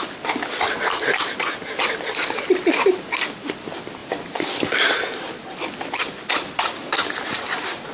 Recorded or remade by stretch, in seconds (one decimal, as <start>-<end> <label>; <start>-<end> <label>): 0.0-7.9 recorded